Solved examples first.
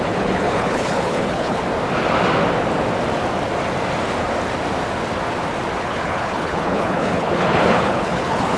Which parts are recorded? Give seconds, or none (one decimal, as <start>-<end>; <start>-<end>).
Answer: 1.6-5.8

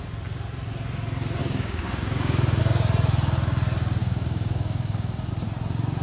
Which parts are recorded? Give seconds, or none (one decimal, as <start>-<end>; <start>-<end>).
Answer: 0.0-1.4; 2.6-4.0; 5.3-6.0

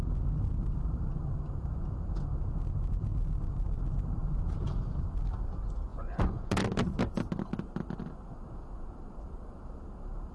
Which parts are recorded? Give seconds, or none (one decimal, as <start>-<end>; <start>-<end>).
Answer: 0.0-5.9; 6.5-10.3

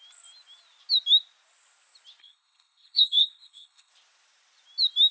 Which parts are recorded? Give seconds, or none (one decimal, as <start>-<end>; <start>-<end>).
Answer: 0.0-2.2; 3.9-5.1

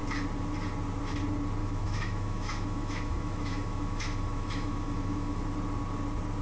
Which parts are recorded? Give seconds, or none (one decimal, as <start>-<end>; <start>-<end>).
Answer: 0.0-1.6; 5.4-6.4

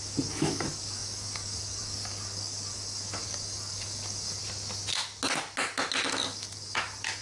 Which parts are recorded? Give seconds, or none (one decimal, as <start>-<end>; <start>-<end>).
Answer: 4.4-6.2

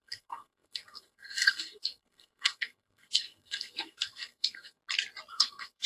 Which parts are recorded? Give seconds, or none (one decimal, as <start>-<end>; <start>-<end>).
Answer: 4.8-5.3